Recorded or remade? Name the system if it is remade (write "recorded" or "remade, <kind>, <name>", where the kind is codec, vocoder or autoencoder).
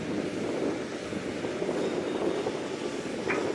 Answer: recorded